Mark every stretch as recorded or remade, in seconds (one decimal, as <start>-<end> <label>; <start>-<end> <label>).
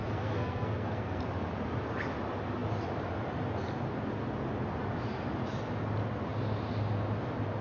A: 0.0-1.2 remade; 1.2-7.6 recorded